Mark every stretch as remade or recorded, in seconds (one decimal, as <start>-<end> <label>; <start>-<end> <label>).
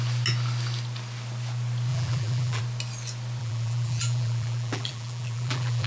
0.0-1.9 recorded; 1.9-2.6 remade; 2.6-3.4 recorded; 3.4-5.9 remade